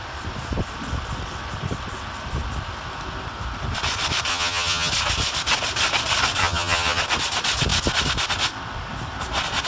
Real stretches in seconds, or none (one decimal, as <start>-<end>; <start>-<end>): 0.0-4.3; 4.9-6.4; 7.0-9.7